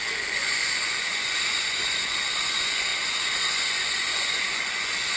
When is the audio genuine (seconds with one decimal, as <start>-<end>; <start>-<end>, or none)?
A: none